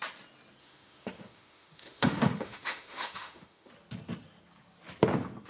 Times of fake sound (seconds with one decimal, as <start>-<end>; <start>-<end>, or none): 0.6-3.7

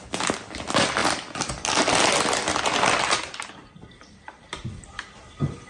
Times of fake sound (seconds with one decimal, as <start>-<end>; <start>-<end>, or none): none

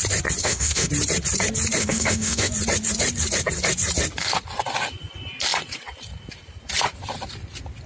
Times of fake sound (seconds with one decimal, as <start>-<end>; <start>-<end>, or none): 0.4-0.9; 1.8-2.5